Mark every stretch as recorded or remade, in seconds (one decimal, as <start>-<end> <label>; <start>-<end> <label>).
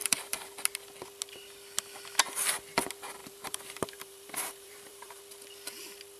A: 0.0-0.5 remade; 0.5-3.2 recorded; 3.2-5.2 remade; 5.2-6.2 recorded